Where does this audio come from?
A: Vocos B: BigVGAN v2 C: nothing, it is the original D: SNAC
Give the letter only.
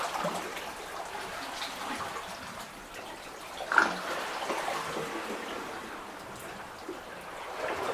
C